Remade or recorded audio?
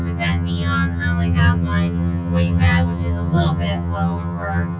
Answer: remade